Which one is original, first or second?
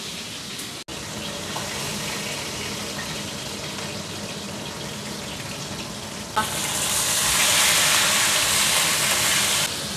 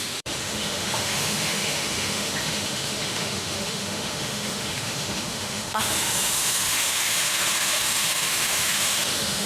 first